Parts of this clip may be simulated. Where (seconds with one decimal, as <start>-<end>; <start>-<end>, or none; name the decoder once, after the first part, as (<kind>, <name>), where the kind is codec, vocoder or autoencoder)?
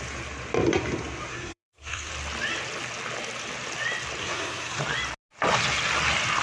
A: 1.3-2.1 (codec, SNAC); 4.2-4.8